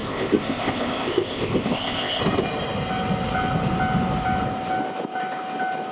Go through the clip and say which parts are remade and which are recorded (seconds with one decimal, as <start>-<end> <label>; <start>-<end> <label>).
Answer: 0.0-2.2 remade; 2.2-5.9 recorded